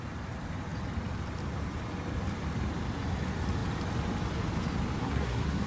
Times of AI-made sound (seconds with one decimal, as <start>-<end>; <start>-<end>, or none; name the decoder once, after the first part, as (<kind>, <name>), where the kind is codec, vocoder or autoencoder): 5.0-5.7 (codec, SNAC)